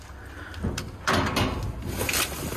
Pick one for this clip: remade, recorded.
recorded